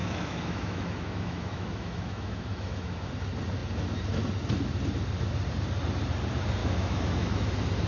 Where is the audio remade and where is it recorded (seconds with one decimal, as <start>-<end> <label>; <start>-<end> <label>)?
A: 0.0-3.1 remade; 3.1-6.6 recorded; 6.6-7.5 remade; 7.5-7.9 recorded